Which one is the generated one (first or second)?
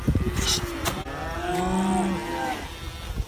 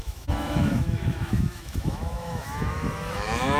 second